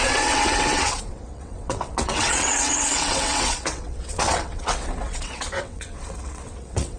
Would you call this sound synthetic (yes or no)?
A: yes